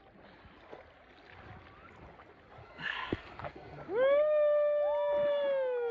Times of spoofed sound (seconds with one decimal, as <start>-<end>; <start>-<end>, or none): 2.6-3.8